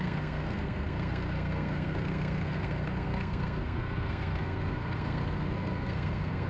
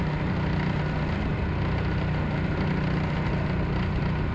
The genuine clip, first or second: second